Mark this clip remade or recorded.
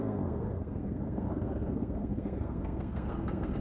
remade